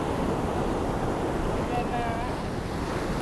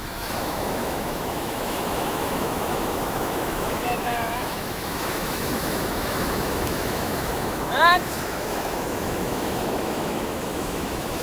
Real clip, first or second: first